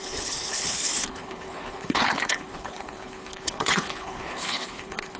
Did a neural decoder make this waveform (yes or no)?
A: yes